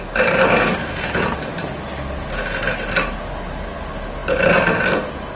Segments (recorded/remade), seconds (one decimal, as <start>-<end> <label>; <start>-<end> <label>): 0.0-5.4 recorded